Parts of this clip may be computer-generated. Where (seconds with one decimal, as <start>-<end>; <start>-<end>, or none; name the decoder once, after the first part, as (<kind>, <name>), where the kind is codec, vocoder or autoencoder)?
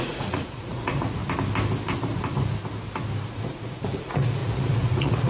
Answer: 0.0-1.2 (vocoder, Vocos); 3.3-5.3